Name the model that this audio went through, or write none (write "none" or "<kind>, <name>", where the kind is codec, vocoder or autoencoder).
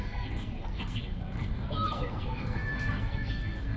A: codec, SNAC